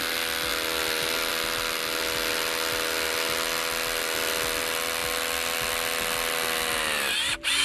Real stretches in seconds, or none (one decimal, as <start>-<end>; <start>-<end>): 0.0-7.6